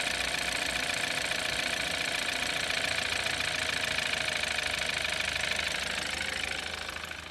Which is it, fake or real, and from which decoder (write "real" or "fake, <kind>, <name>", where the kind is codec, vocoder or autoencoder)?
real